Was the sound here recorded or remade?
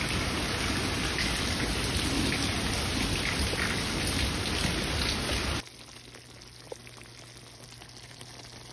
recorded